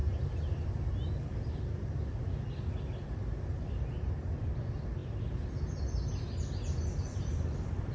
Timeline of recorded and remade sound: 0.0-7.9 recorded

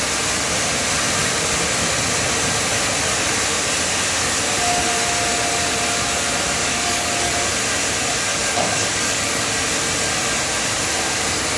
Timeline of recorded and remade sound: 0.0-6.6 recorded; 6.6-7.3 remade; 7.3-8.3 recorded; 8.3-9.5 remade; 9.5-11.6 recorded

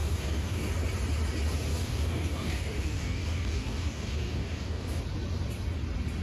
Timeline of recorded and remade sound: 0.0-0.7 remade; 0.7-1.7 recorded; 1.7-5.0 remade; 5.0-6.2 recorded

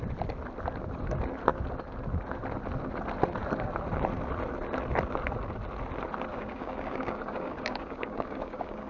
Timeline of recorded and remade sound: 0.0-6.3 recorded; 6.3-8.9 remade